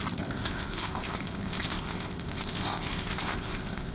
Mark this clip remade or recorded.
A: remade